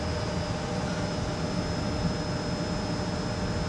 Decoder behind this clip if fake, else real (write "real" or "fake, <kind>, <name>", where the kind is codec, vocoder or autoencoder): real